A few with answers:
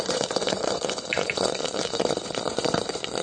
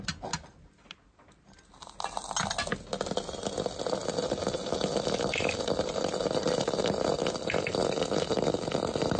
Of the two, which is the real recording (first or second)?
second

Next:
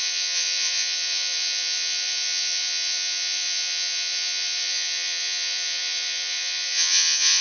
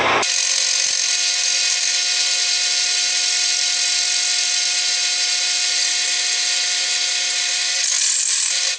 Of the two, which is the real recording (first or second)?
second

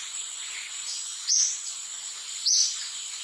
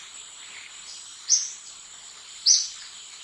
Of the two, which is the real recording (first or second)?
second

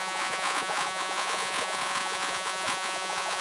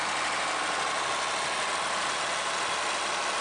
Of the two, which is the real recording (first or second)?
second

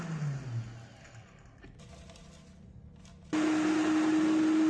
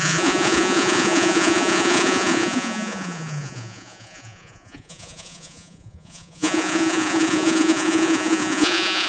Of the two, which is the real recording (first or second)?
first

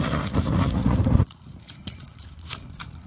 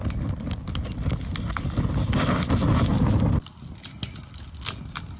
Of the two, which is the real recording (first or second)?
second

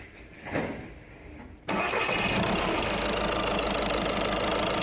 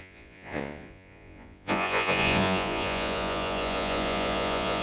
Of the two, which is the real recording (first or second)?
first